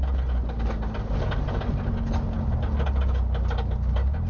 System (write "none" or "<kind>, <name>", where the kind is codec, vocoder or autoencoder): none